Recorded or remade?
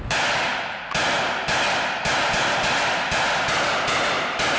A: recorded